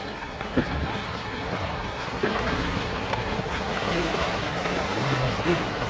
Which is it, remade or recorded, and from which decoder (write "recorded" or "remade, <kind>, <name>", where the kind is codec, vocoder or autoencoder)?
remade, codec, SNAC